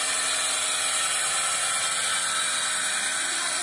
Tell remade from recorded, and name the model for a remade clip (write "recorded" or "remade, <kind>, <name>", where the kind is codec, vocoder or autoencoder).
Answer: recorded